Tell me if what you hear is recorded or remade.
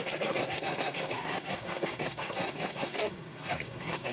remade